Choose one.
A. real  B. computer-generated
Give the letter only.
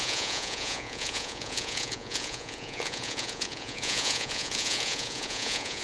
B